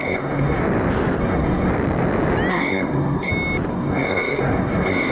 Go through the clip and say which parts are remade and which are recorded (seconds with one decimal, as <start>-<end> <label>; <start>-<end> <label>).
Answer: 0.0-0.6 remade; 0.6-1.2 recorded; 1.2-1.7 remade; 1.7-2.5 recorded; 2.5-3.3 remade; 3.3-3.7 recorded; 3.7-5.1 remade

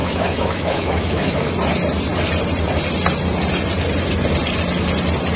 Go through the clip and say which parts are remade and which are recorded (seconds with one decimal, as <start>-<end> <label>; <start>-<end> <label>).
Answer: 0.0-1.5 remade; 1.5-5.4 recorded